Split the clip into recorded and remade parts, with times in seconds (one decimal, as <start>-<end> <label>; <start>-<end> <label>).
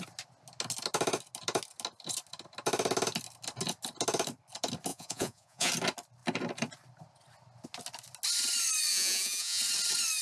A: 0.0-4.9 recorded; 4.9-5.7 remade; 5.7-8.9 recorded; 8.9-9.6 remade; 9.6-10.2 recorded